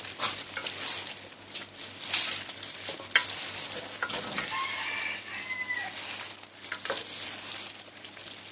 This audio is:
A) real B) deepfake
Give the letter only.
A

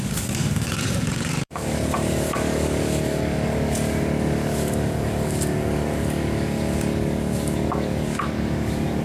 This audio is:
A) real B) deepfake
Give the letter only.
B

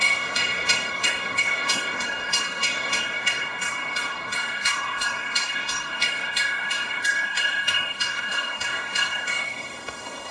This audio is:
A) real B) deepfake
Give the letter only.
B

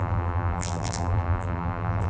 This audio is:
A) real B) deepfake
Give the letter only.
B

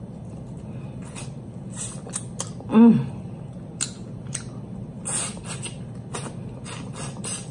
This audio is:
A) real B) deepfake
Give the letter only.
A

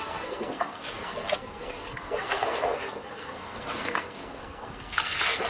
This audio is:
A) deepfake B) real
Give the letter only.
A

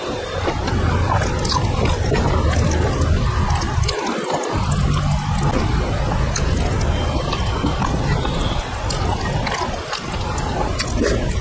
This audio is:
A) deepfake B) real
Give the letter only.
B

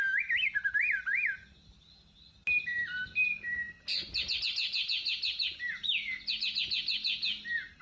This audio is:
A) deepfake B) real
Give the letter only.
B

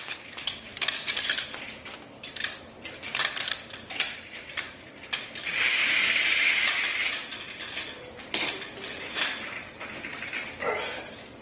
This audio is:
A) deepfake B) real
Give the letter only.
A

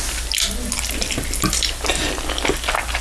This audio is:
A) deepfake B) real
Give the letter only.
B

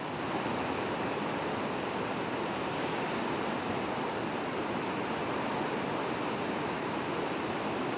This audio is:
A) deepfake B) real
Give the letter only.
B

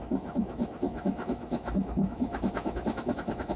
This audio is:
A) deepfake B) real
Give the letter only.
A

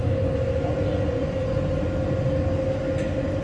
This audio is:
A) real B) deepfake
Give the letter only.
A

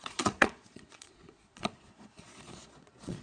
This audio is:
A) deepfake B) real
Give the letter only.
A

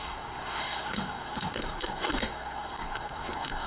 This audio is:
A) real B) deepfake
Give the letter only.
B